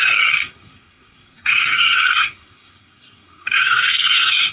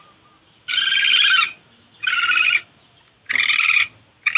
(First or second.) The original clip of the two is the second